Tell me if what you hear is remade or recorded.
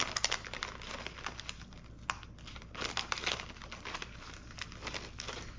recorded